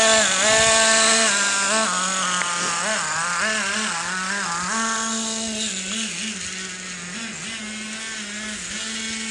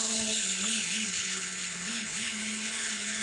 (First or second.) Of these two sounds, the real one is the first